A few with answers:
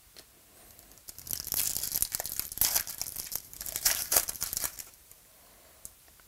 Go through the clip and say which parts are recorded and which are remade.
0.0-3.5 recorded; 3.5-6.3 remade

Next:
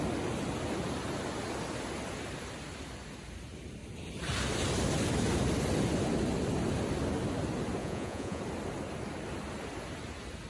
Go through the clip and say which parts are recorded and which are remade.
0.0-7.8 recorded; 7.8-8.4 remade; 8.4-10.5 recorded

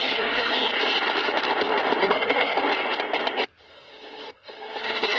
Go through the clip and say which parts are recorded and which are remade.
0.0-0.7 remade; 0.7-2.0 recorded; 2.0-2.6 remade; 2.6-3.7 recorded; 3.7-5.2 remade

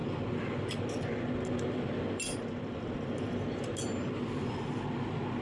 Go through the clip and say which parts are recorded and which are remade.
0.0-5.4 recorded